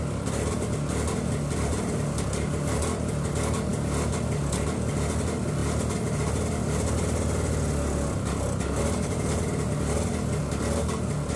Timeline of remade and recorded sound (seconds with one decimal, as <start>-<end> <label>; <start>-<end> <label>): 0.0-11.4 recorded